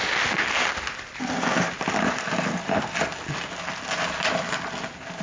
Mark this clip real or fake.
real